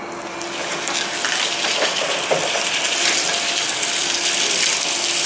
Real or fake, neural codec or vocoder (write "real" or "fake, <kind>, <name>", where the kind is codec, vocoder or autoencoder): real